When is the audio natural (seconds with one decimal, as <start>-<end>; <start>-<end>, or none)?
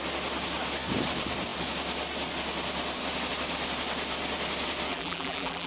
0.0-4.9